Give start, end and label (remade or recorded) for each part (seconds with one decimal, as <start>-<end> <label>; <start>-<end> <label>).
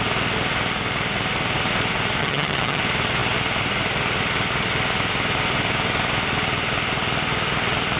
0.0-2.2 recorded; 2.2-2.8 remade; 2.8-8.0 recorded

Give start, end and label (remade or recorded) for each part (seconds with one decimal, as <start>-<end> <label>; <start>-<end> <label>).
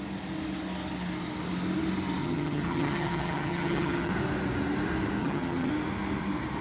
0.0-2.2 recorded; 2.2-4.1 remade; 4.1-5.2 recorded; 5.2-5.7 remade; 5.7-6.6 recorded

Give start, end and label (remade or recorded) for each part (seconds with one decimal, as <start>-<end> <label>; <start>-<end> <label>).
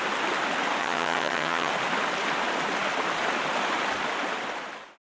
0.0-0.8 recorded; 0.8-1.7 remade; 1.7-5.1 recorded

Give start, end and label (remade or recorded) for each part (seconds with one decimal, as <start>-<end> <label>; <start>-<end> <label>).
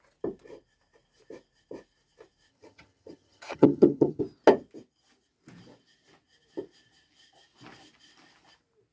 0.0-2.5 recorded; 2.5-4.2 remade; 4.2-8.9 recorded